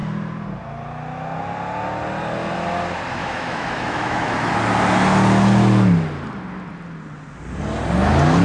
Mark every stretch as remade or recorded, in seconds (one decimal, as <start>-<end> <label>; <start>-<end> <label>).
0.0-3.2 recorded; 3.2-4.5 remade; 4.5-8.4 recorded